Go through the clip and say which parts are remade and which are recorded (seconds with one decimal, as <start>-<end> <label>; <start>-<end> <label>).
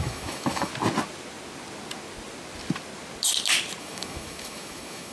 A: 0.0-0.7 remade; 0.7-3.8 recorded; 3.8-5.1 remade